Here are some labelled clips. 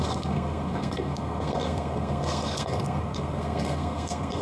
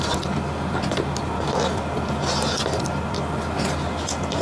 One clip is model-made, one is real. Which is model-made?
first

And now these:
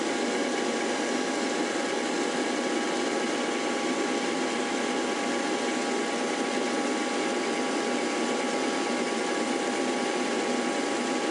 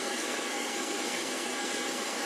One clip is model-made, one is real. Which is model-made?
second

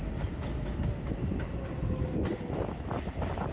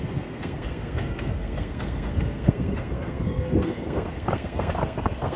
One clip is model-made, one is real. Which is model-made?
second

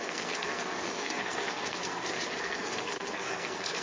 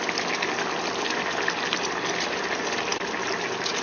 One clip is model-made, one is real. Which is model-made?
first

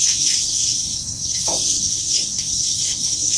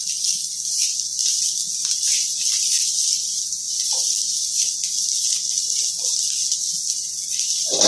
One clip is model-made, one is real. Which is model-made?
first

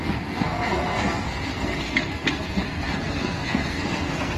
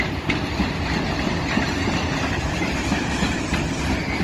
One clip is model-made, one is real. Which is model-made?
first